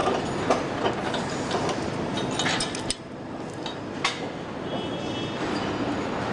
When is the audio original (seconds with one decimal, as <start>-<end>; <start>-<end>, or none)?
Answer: 0.0-6.3